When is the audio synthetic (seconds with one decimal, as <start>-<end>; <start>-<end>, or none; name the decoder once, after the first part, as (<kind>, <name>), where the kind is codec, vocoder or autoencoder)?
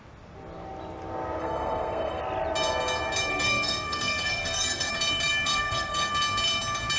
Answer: 1.4-2.2 (codec, SNAC); 3.3-4.9; 5.5-6.1